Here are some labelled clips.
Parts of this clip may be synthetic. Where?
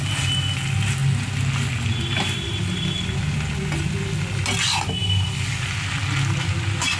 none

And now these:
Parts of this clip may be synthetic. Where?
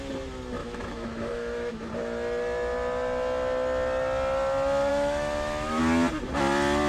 0.6-1.9 (autoencoder, DAC-VAE); 4.9-5.8